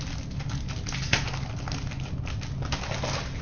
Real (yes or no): yes